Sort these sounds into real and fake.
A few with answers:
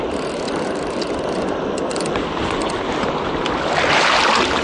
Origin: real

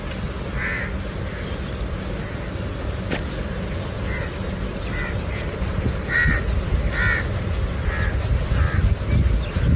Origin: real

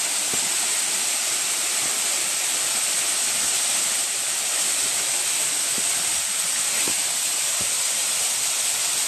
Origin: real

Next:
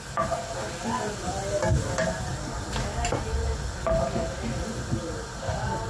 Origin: real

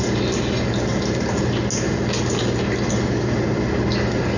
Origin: real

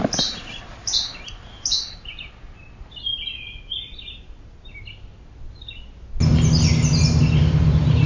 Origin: real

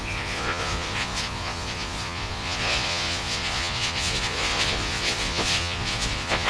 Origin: fake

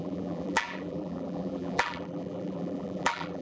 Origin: fake